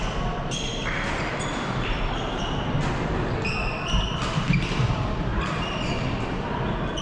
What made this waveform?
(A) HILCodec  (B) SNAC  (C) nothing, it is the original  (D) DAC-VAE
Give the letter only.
C